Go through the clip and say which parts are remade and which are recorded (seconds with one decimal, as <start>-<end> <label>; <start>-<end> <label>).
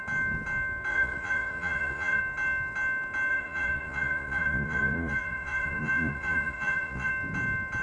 0.0-0.9 recorded; 0.9-2.2 remade; 2.2-3.3 recorded; 3.3-7.1 remade; 7.1-7.8 recorded